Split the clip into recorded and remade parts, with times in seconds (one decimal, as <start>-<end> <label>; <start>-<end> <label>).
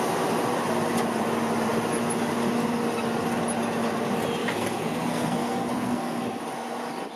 0.0-4.4 recorded; 4.4-6.4 remade; 6.4-7.2 recorded